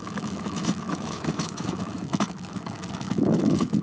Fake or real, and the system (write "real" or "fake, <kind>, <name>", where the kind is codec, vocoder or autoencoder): fake, autoencoder, DAC-VAE